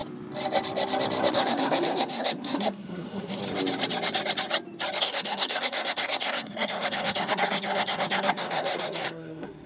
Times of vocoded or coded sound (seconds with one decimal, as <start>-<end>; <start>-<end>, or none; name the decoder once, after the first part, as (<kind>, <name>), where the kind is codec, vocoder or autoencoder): 1.3-3.4 (codec, SNAC); 5.0-9.7

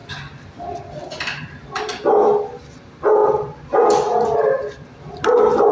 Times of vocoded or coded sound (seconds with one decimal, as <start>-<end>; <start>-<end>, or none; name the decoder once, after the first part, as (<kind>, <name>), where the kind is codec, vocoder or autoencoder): none

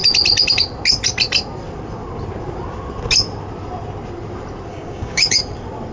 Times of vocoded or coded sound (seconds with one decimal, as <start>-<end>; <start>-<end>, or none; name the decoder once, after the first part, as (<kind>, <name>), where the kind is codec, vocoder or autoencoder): 4.7-5.4 (codec, DAC)

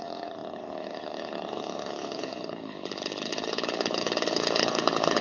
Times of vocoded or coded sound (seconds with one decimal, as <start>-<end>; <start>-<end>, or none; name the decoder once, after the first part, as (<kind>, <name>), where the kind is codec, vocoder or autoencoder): 0.0-5.2 (codec, HILCodec)

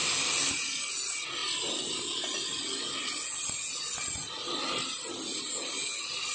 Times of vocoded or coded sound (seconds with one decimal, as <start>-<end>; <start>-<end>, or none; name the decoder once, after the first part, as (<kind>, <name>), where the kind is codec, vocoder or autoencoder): none

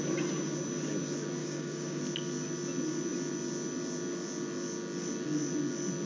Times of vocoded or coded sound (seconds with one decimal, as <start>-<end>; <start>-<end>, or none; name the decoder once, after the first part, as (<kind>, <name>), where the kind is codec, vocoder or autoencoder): 1.4-2.0 (codec, DAC)

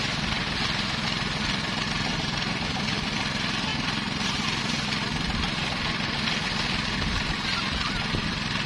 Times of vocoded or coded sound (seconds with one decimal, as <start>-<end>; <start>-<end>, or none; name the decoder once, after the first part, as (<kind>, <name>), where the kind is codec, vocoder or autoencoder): none

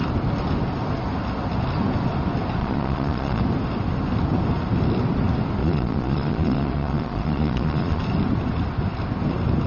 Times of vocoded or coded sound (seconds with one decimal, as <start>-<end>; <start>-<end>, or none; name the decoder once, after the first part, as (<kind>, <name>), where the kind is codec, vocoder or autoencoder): 2.6-3.4 (vocoder, Vocos); 5.6-8.0